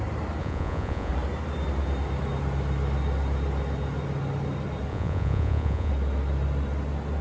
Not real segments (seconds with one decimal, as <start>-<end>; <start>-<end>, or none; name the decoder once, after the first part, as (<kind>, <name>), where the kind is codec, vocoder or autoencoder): 0.4-1.1 (vocoder, Vocos); 4.9-5.9

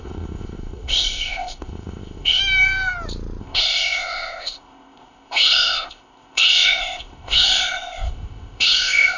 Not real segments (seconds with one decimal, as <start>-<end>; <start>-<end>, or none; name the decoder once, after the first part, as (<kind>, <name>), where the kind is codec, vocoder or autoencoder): 0.0-2.4 (codec, ZipCodec); 3.4-9.2